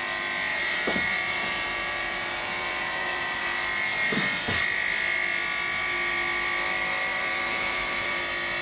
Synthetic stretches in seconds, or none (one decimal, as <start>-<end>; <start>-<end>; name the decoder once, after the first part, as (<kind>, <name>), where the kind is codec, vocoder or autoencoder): 0.5-3.4 (vocoder, BigVGAN v2); 7.1-8.2